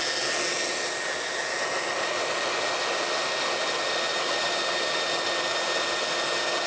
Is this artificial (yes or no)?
no